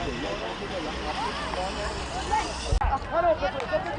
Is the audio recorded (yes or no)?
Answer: yes